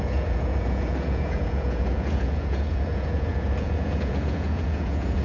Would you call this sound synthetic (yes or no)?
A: yes